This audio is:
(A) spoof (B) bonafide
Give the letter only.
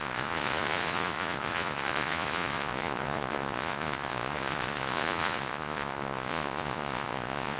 A